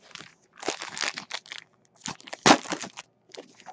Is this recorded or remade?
recorded